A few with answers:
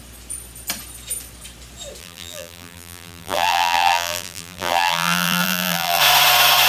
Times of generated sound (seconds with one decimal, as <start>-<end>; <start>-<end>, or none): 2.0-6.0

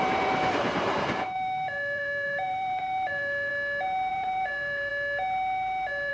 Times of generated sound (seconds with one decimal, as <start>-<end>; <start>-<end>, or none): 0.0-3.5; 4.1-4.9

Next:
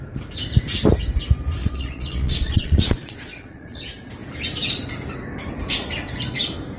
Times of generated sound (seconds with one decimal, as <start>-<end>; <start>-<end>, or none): 1.6-3.8

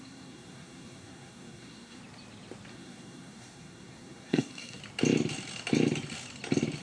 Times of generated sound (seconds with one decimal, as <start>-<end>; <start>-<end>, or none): 0.0-2.0; 2.7-4.8